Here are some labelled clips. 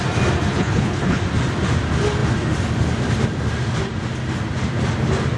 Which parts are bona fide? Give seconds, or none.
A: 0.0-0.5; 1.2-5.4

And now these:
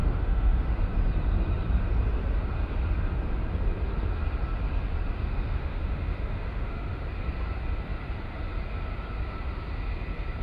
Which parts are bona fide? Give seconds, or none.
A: 0.8-5.1; 7.0-10.4

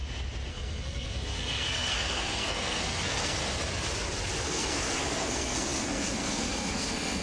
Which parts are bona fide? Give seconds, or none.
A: 0.0-0.5; 3.4-4.4